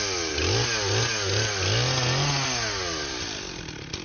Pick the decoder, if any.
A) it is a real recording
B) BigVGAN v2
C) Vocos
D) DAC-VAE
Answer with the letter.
A